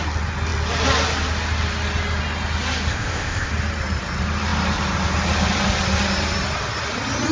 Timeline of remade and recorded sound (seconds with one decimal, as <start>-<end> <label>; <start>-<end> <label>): 0.0-2.9 recorded; 2.9-3.5 remade; 3.5-7.3 recorded